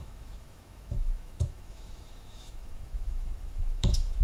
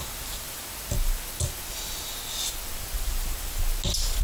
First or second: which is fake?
first